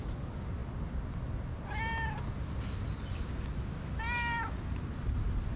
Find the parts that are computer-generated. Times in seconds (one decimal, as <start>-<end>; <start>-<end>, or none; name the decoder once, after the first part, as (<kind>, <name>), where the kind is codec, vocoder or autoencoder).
none